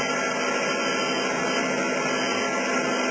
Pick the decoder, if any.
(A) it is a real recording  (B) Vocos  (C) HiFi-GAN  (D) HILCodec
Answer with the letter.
A